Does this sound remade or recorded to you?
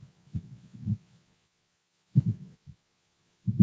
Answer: remade